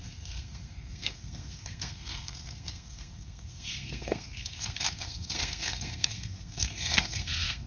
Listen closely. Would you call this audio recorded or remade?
remade